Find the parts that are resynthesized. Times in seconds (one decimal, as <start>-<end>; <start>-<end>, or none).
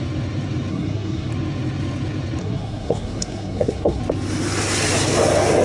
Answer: 0.7-1.3; 2.4-4.0